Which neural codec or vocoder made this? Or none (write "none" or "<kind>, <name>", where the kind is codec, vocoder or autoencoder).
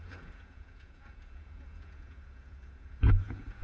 vocoder, Vocos